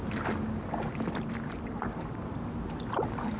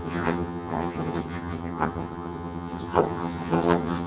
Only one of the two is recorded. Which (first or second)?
first